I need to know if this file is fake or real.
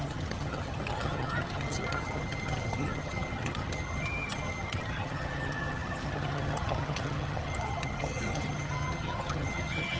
fake